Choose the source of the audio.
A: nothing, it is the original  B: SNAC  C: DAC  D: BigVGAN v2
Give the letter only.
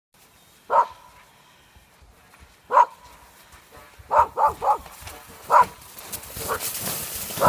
A